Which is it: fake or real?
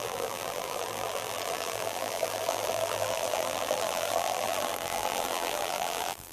fake